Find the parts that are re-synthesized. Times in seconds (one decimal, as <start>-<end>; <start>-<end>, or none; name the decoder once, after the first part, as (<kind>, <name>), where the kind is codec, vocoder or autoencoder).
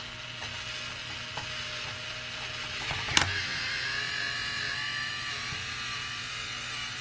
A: none